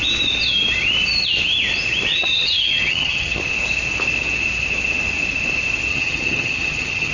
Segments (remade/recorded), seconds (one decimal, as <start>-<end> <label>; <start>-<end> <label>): 0.0-2.1 recorded; 2.1-3.4 remade; 3.4-5.9 recorded; 5.9-7.1 remade

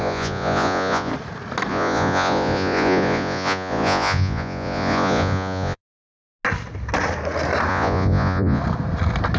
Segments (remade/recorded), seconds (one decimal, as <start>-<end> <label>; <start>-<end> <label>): 0.0-1.1 remade; 1.1-1.7 recorded; 1.7-5.8 remade; 5.8-7.7 recorded; 7.7-8.6 remade; 8.6-9.4 recorded